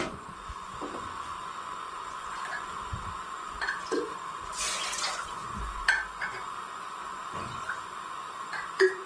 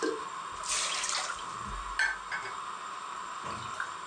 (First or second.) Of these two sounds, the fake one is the first